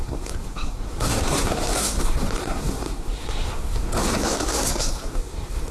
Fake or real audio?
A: fake